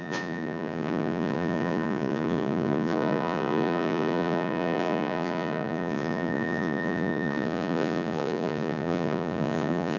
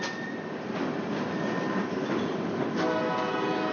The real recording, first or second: second